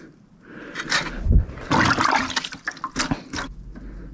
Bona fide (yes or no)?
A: yes